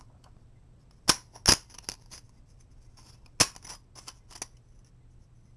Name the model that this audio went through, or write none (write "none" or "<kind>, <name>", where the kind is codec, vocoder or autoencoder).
none